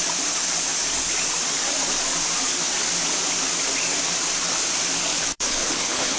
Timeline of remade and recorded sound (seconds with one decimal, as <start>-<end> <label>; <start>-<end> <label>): 0.0-5.1 recorded; 5.1-6.2 remade